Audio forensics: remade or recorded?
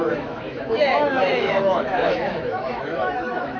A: remade